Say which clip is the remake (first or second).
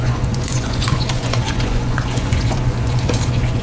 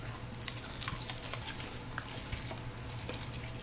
first